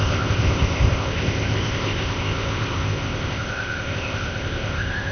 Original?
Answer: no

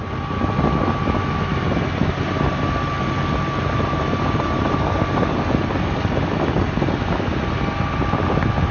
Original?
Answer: yes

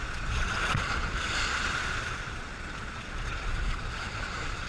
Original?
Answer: no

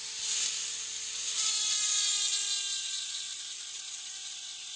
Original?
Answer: yes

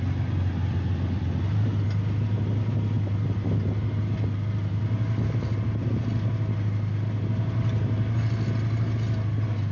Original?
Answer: yes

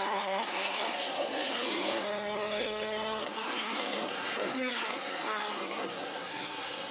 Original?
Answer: no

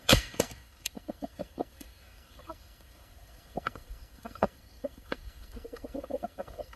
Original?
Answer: no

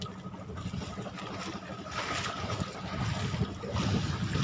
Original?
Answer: yes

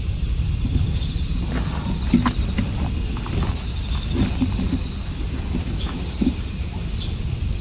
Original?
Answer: yes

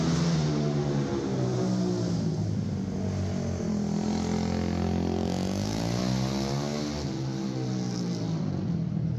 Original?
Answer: yes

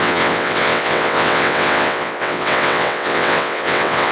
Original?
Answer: no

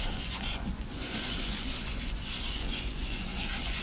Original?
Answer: no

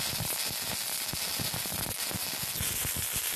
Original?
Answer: yes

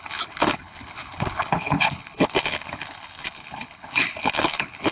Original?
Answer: no